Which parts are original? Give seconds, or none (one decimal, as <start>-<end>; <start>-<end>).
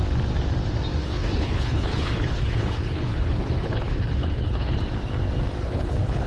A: 0.0-1.0; 4.8-5.6